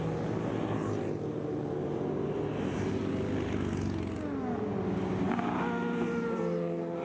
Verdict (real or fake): real